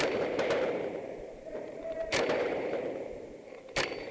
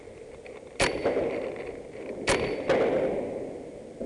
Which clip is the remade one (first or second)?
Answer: first